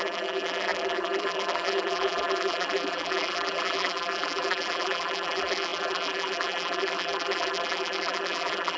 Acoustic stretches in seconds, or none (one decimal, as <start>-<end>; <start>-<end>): none